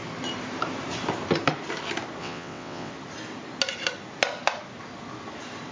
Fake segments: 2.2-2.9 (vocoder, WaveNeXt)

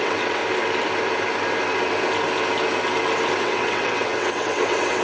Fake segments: 0.0-0.4 (vocoder, WaveNeXt); 3.4-5.0